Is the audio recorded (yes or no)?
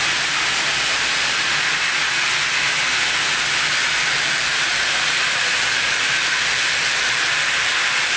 yes